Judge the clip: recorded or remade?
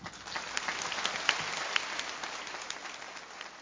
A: recorded